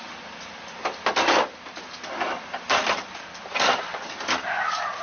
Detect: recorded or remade recorded